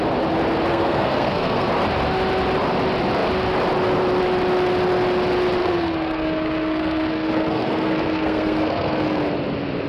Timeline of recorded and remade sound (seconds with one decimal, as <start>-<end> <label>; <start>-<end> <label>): 0.0-0.7 recorded; 0.7-1.7 remade; 1.7-5.6 recorded; 5.6-9.2 remade; 9.2-9.9 recorded